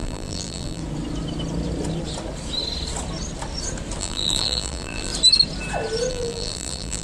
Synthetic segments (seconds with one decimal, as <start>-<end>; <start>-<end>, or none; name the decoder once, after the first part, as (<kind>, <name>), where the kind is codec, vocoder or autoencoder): 0.0-0.8 (vocoder, BigVGAN v2); 4.0-5.1; 6.1-7.0